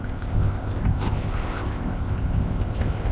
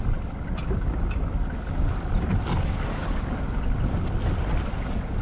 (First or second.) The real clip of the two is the second